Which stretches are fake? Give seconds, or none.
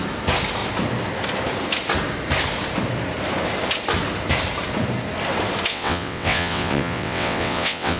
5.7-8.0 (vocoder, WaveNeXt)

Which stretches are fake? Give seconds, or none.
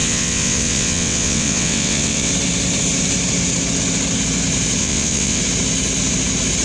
0.0-2.3 (vocoder, WaveNeXt); 4.8-5.4